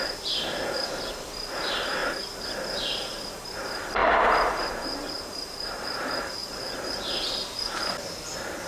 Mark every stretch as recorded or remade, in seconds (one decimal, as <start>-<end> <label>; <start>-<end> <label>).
0.0-2.0 remade; 2.0-3.4 recorded; 3.4-6.4 remade; 6.4-8.7 recorded